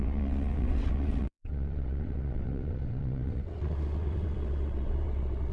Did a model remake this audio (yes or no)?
yes